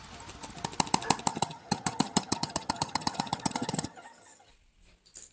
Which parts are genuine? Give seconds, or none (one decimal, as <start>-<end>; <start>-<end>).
0.0-1.3; 4.5-5.3

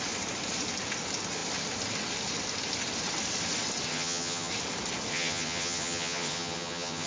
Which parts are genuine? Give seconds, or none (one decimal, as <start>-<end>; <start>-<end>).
0.0-3.9; 4.5-5.1

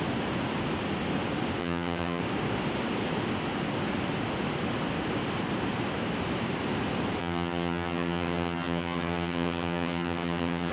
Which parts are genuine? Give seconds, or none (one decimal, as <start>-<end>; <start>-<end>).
0.0-1.6; 2.2-7.2

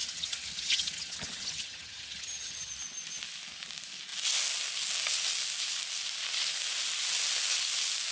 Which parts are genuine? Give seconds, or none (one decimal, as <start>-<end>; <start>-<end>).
2.7-8.1